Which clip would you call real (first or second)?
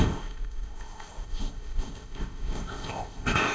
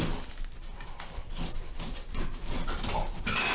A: second